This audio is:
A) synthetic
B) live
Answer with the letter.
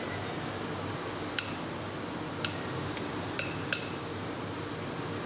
B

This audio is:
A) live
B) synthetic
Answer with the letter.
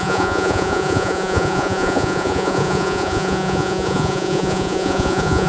B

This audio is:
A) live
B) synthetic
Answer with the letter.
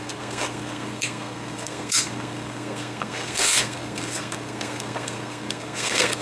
B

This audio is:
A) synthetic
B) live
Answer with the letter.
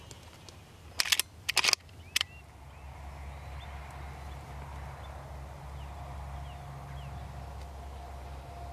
B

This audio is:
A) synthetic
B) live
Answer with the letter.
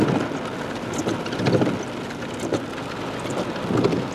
B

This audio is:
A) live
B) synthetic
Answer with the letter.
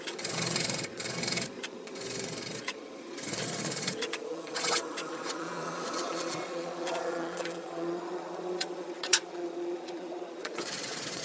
B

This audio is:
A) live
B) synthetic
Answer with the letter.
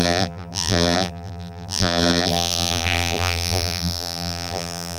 B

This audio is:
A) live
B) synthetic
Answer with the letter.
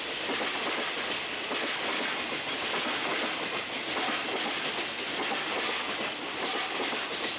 A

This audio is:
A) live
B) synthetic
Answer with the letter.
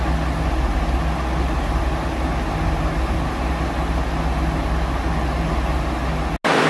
A